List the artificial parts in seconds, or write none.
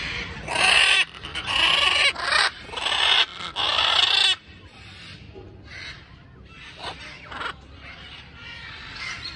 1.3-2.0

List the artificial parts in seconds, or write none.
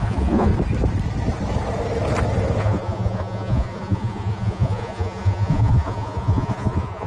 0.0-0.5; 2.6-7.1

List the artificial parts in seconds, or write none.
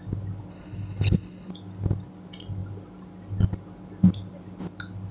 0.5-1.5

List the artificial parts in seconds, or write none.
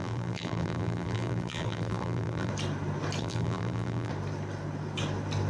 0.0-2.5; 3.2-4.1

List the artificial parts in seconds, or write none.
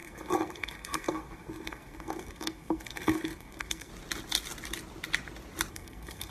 0.0-3.9; 5.7-6.3